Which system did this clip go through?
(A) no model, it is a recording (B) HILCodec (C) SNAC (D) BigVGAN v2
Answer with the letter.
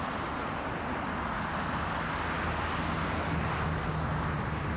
A